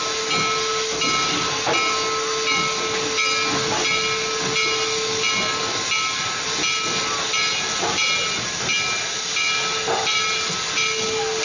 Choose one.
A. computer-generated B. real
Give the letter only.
B